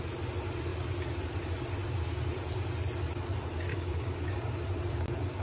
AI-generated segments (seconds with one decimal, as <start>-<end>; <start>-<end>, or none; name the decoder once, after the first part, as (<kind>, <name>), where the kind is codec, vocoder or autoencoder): 3.7-4.2 (codec, DAC)